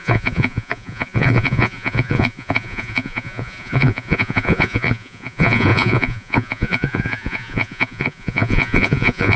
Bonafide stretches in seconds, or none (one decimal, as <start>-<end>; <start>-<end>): none